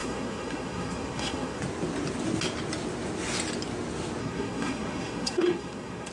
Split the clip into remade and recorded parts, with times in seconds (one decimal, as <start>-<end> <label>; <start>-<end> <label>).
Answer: 0.0-1.6 remade; 1.6-4.2 recorded; 4.2-6.1 remade